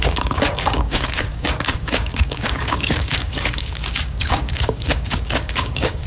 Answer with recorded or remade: remade